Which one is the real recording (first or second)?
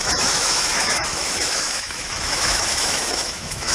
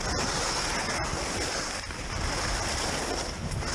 second